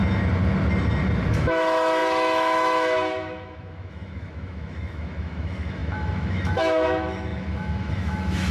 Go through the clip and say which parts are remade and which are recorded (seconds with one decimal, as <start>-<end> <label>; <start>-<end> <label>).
0.0-1.3 recorded; 1.3-8.5 remade